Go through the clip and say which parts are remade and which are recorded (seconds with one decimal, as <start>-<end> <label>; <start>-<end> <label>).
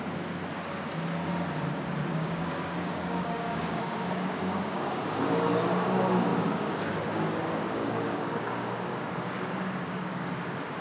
0.0-2.1 recorded; 2.1-10.8 remade